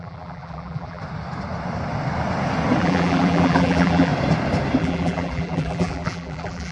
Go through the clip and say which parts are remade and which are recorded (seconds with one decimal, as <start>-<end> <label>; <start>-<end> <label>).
0.0-1.0 remade; 1.0-2.8 recorded; 2.8-4.1 remade; 4.1-4.8 recorded; 4.8-6.7 remade